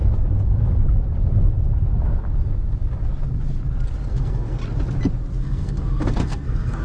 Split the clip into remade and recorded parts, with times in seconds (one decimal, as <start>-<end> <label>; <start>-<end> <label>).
0.0-4.1 recorded; 4.1-4.6 remade; 4.6-5.4 recorded; 5.4-6.8 remade